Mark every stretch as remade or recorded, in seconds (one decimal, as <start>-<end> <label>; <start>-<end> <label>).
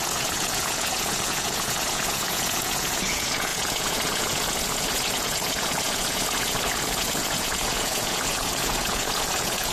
0.0-9.7 remade